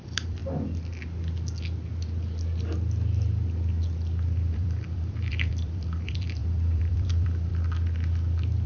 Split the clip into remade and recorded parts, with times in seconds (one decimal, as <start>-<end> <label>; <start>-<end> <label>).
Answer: 0.0-0.4 remade; 0.4-4.5 recorded; 4.5-7.5 remade; 7.5-8.7 recorded